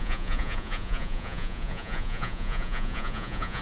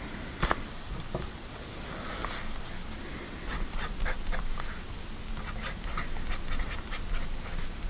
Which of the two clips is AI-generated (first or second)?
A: first